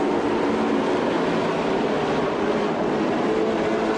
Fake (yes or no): no